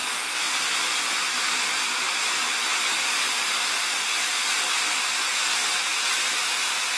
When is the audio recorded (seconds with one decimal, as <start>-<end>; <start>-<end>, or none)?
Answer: 0.0-7.0